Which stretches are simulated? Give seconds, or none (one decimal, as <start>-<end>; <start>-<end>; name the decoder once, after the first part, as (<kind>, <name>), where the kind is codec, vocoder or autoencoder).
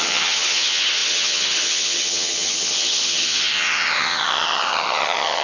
0.0-5.4 (vocoder, HiFi-GAN)